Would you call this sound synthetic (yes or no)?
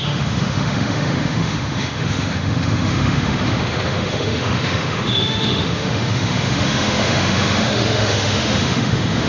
yes